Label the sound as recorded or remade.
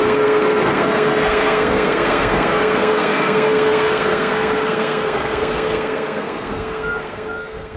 remade